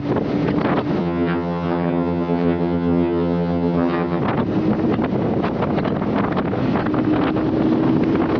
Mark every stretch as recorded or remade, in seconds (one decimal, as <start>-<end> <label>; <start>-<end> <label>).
0.0-1.0 recorded; 1.0-4.2 remade; 4.2-8.4 recorded

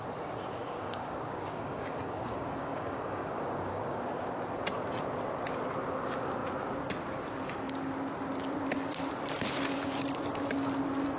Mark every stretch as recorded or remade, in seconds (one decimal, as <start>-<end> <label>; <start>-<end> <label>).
0.0-0.6 recorded; 0.6-4.0 remade; 4.0-11.2 recorded

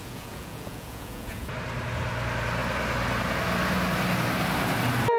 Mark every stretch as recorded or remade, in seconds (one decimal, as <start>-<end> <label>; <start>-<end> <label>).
0.0-1.5 remade; 1.5-5.2 recorded

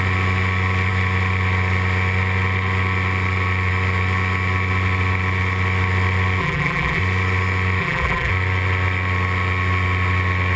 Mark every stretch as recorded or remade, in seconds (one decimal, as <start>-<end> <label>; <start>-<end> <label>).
0.0-6.4 recorded; 6.4-7.0 remade; 7.0-7.8 recorded; 7.8-8.3 remade; 8.3-10.6 recorded